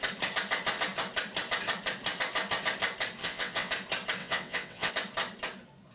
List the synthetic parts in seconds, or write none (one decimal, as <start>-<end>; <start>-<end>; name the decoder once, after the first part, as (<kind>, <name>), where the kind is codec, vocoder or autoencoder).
3.2-3.7 (vocoder, WaveNeXt); 4.2-4.9